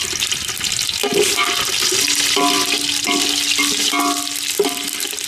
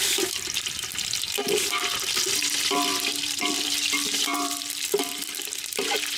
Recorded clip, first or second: first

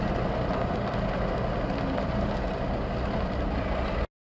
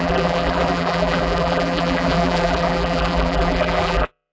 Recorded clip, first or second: first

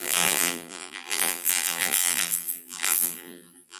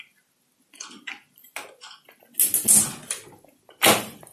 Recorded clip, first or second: second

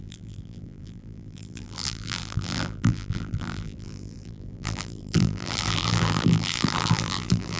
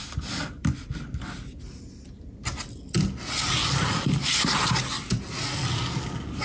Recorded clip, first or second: second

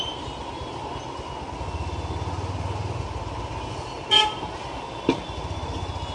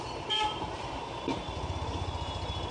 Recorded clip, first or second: first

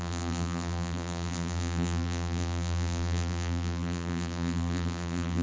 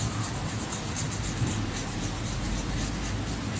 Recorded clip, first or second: second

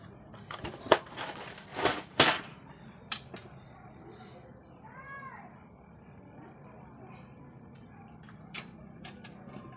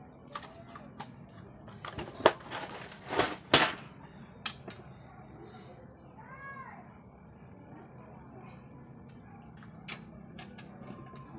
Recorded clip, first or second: second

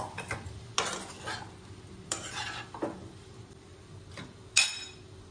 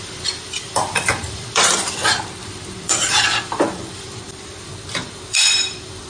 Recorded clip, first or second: first